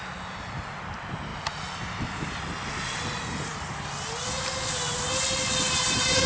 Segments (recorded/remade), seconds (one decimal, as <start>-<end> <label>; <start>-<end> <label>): 0.0-6.3 recorded